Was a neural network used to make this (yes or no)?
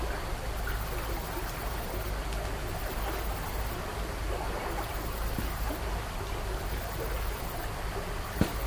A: no